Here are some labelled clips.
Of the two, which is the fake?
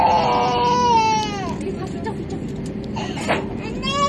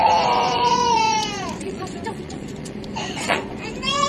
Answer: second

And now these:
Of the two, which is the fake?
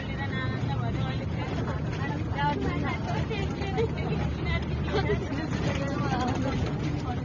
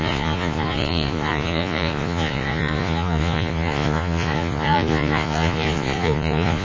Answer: second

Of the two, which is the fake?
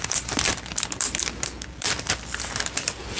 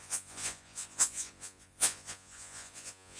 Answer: second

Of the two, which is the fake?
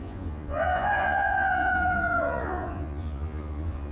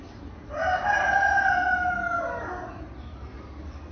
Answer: first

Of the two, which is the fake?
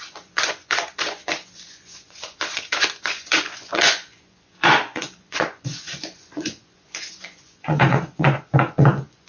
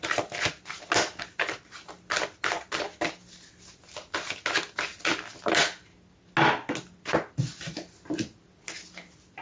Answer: first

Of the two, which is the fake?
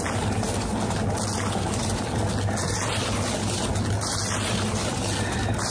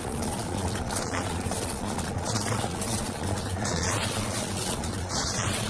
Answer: second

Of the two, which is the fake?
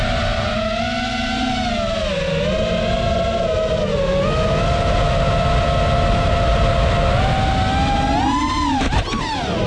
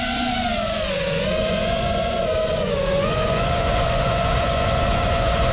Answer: second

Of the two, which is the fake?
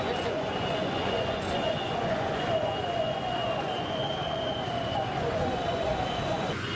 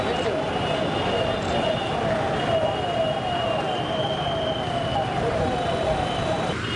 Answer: first